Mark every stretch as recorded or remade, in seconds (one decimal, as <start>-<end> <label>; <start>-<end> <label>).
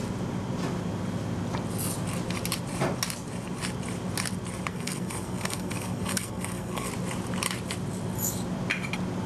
0.0-4.7 recorded; 4.7-6.9 remade; 6.9-9.3 recorded